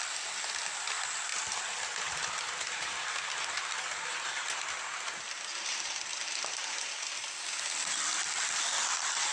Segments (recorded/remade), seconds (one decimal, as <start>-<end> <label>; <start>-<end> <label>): 0.0-1.3 recorded; 1.3-4.8 remade; 4.8-9.3 recorded